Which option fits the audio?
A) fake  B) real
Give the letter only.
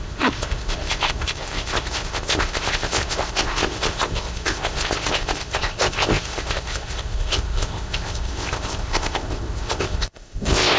A